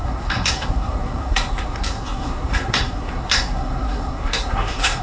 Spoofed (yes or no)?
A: yes